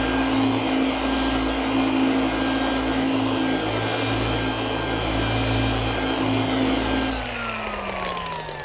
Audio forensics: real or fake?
real